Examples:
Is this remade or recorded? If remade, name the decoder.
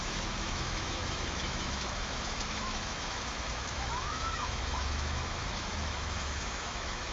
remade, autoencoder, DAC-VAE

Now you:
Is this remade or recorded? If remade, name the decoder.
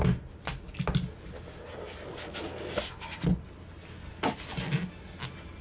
recorded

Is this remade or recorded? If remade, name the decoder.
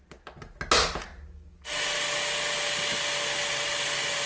recorded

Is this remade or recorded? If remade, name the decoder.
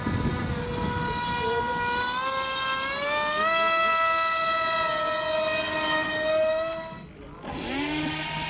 recorded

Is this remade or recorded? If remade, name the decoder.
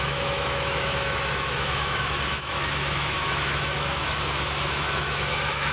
remade, autoencoder, DAC-VAE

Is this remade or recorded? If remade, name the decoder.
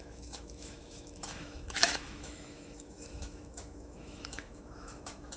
remade, autoencoder, DAC-VAE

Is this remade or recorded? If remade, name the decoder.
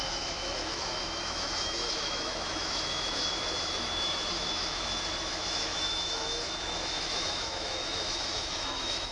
remade, autoencoder, DAC-VAE